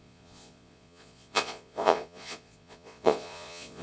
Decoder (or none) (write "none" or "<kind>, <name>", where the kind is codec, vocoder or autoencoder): vocoder, Vocos